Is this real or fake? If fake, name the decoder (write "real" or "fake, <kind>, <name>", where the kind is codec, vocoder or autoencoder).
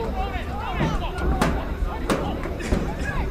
fake, vocoder, BigVGAN v2